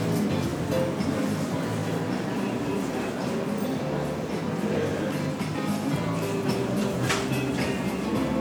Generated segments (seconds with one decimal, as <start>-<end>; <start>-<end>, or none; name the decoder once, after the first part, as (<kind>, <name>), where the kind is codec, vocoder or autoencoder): none